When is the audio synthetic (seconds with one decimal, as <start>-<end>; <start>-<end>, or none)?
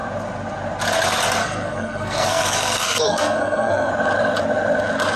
1.4-3.9